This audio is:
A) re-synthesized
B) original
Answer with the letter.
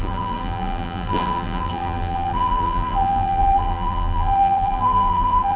A